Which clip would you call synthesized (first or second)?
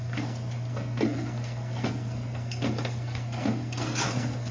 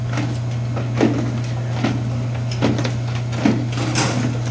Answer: first